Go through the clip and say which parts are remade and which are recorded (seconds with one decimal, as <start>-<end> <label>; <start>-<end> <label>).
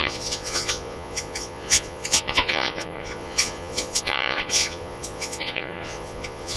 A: 0.0-6.6 remade